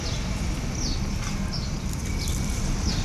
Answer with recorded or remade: recorded